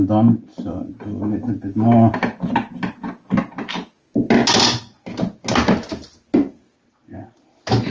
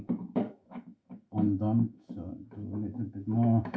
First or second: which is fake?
second